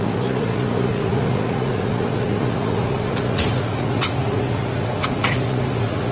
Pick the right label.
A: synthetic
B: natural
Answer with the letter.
A